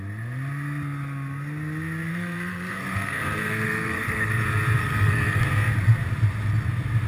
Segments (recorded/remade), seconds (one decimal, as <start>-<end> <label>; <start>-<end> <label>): 0.0-2.1 recorded; 2.1-4.3 remade; 4.3-4.8 recorded; 4.8-5.4 remade; 5.4-7.1 recorded